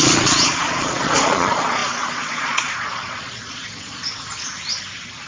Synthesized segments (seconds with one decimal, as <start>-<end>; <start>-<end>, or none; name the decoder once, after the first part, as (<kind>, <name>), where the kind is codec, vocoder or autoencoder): 0.0-4.0 (vocoder, Vocos)